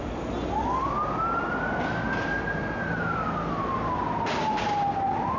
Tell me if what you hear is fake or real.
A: real